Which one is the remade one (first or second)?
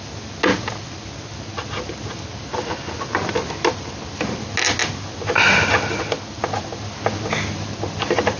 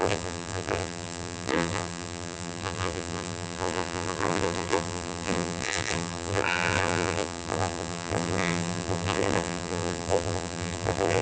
second